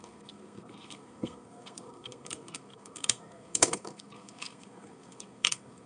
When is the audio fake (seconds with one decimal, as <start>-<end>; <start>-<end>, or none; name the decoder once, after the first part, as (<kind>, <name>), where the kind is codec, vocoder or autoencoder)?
0.0-5.9 (codec, SNAC)

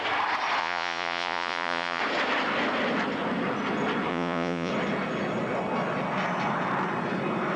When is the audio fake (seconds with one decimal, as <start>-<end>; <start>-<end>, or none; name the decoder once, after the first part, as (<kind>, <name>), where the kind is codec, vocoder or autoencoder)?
0.6-2.0 (vocoder, Vocos); 4.1-4.7

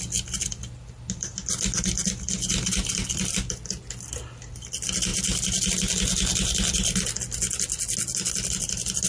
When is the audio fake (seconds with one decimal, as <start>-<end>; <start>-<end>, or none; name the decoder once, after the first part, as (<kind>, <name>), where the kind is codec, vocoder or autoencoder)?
none

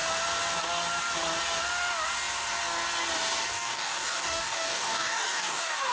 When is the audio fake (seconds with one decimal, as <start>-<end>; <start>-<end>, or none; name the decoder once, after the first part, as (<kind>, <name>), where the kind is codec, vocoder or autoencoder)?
3.5-5.9 (codec, DAC)

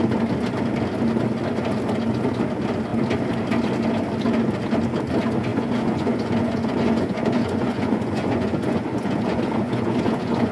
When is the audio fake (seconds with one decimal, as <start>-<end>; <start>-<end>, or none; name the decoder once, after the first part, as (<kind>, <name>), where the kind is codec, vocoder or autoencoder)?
5.5-10.5 (vocoder, Vocos)

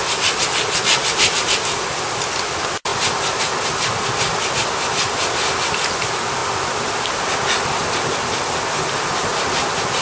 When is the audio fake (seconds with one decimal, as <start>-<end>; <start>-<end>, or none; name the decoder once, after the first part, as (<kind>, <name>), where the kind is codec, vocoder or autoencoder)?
none

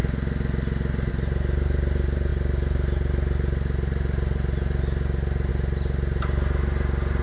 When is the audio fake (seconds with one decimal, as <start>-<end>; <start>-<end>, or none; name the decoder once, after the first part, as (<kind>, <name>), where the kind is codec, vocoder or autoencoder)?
none